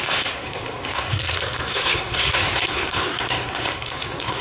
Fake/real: fake